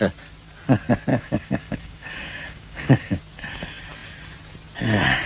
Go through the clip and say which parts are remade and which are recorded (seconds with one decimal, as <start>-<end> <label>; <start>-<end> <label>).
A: 0.0-1.1 recorded; 1.1-3.2 remade; 3.2-5.3 recorded